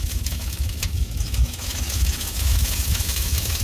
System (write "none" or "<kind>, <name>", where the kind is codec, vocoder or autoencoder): autoencoder, DAC-VAE